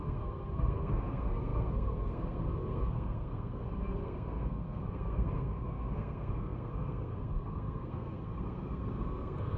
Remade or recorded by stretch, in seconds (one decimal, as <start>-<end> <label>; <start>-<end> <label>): 0.0-9.6 remade